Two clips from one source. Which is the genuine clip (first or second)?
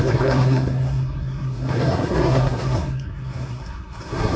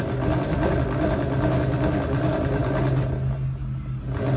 second